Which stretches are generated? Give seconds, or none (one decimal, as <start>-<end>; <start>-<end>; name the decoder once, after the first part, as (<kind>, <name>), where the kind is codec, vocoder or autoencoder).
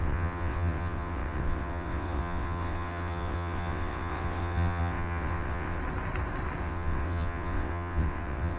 0.0-5.8 (vocoder, WaveNeXt); 6.6-8.6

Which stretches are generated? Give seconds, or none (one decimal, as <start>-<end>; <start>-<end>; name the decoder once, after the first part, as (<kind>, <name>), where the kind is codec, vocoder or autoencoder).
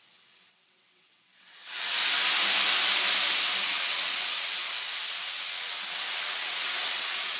0.0-2.0 (vocoder, WaveNeXt); 3.6-4.6; 5.1-7.4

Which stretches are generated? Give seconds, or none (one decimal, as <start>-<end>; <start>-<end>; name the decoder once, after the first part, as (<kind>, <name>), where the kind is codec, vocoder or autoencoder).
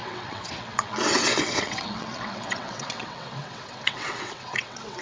0.0-5.0 (vocoder, WaveNeXt)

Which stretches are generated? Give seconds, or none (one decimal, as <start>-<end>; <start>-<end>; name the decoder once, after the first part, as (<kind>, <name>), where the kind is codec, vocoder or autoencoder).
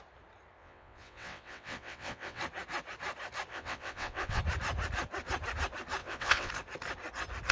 0.6-2.4 (vocoder, WaveNeXt); 3.5-4.4; 6.0-6.5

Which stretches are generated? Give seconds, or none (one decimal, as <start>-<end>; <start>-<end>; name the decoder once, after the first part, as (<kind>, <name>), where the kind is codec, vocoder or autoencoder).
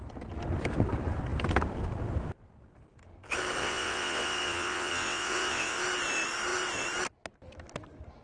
3.6-5.8 (vocoder, WaveNeXt)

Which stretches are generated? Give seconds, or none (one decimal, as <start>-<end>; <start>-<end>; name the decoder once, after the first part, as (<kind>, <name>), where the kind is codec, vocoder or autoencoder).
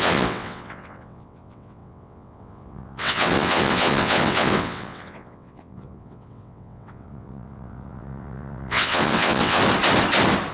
0.0-9.6 (vocoder, WaveNeXt)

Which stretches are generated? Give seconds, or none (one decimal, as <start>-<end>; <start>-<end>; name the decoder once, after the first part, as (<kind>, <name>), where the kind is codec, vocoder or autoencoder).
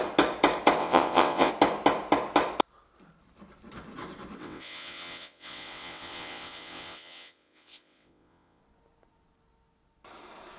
0.8-1.5 (vocoder, WaveNeXt); 4.4-8.6